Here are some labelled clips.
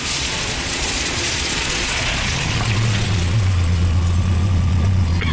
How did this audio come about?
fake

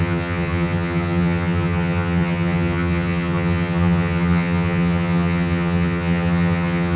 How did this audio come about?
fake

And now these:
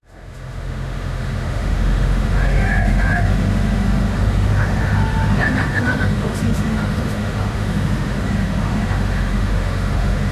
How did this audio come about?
fake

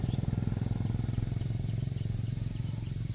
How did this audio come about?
real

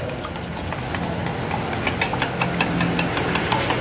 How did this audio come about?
real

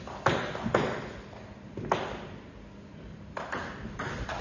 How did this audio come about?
real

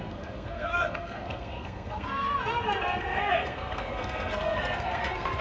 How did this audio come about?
fake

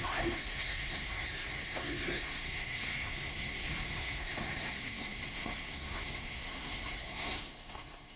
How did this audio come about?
fake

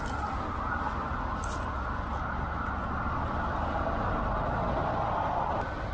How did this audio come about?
real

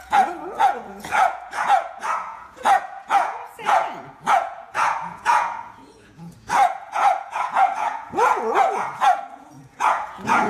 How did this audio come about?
fake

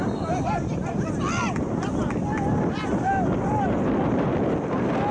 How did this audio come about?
real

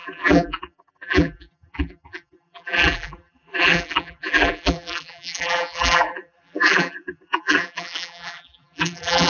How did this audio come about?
fake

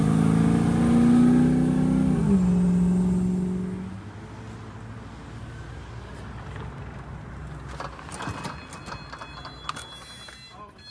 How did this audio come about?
real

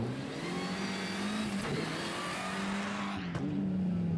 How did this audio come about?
real